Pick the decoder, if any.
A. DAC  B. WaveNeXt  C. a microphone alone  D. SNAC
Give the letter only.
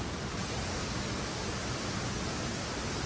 C